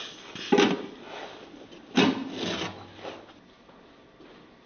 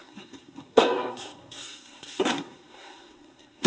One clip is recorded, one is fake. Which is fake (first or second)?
second